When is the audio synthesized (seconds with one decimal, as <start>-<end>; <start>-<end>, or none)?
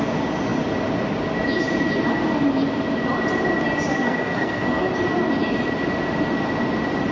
3.9-4.9